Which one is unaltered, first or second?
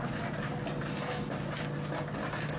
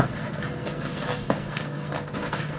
first